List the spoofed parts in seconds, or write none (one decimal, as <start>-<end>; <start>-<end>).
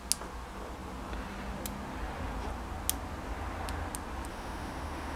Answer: 4.3-5.2